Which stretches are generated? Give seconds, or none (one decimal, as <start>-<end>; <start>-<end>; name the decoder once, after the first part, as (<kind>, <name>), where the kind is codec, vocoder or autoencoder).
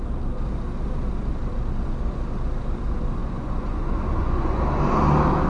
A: 3.2-4.6 (vocoder, Vocos)